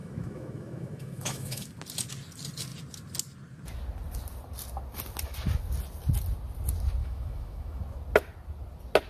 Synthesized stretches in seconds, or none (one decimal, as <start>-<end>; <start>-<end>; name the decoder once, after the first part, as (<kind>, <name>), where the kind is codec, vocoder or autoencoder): 0.0-1.7 (autoencoder, DAC-VAE); 7.0-7.8